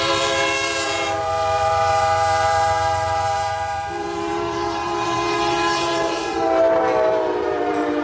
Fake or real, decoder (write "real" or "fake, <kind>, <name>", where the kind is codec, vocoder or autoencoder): fake, vocoder, BigVGAN v2